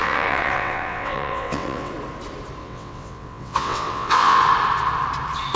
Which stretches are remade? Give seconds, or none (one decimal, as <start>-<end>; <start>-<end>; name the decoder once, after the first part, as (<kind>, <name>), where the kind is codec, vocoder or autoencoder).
0.0-1.9 (vocoder, WaveNeXt); 2.6-4.4